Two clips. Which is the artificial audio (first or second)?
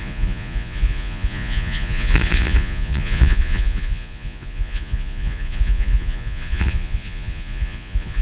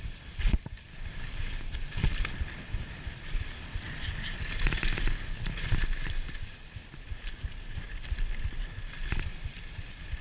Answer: first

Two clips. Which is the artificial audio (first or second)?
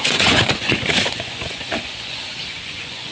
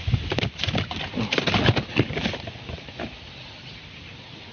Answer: first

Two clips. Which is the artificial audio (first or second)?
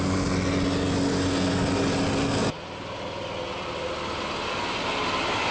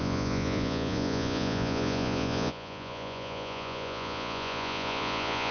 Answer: second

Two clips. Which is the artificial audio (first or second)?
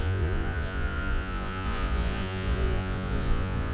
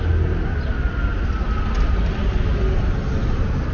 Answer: first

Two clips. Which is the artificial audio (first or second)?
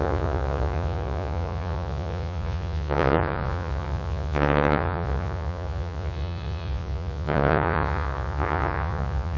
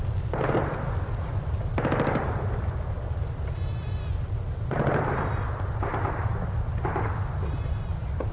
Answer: first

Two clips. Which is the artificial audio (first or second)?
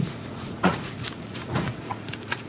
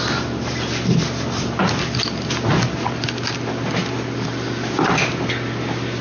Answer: first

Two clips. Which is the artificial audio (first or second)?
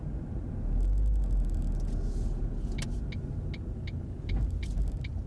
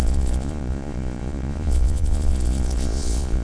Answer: second